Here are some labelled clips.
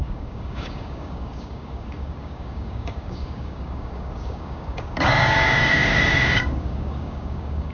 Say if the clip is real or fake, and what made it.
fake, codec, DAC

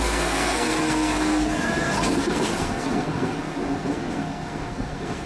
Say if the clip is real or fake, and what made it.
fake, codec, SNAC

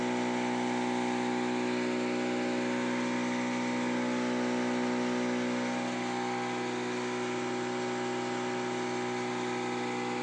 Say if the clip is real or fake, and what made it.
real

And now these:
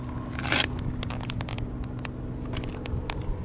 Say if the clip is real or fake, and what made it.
real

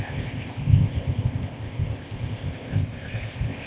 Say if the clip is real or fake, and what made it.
fake, codec, ZipCodec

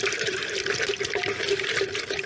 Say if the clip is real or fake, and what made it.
real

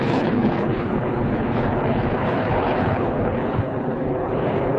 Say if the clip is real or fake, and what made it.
fake, codec, HILCodec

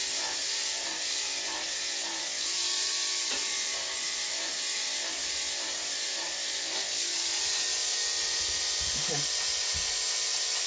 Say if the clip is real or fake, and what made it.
fake, vocoder, BigVGAN v2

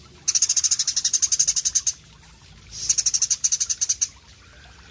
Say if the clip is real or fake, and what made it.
real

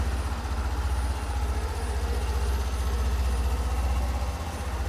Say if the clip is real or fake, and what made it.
real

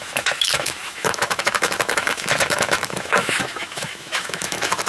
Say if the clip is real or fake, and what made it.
fake, autoencoder, DAC-VAE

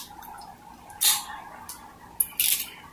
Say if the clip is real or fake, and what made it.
real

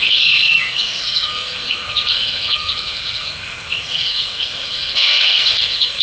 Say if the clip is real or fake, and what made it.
fake, codec, SNAC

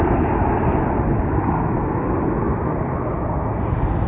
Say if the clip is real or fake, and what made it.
real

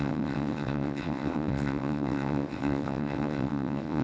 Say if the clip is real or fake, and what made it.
fake, vocoder, WaveNeXt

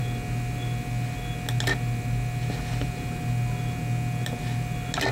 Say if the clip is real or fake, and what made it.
real